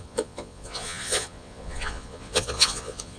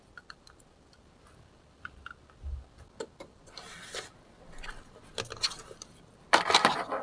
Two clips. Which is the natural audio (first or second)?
second